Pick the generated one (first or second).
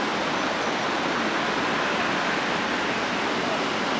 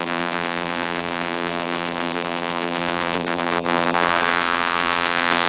second